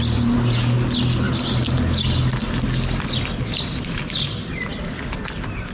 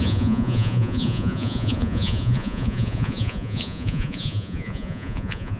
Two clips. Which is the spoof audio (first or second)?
second